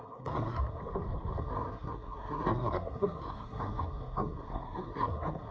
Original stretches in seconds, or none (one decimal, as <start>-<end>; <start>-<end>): 0.8-1.4